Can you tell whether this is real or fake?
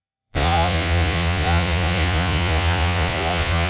fake